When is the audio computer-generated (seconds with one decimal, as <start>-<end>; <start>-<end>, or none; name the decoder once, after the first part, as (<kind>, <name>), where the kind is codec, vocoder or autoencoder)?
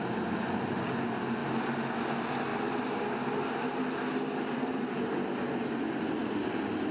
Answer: none